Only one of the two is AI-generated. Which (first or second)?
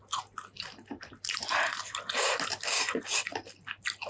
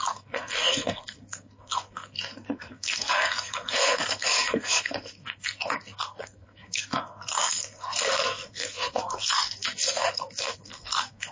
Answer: second